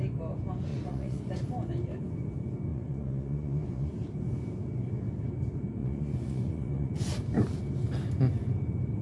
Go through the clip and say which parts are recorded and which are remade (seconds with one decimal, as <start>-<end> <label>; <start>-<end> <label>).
0.0-0.7 recorded; 0.7-1.4 remade; 1.4-2.7 recorded; 2.7-3.9 remade; 3.9-5.8 recorded; 5.8-6.9 remade; 6.9-9.0 recorded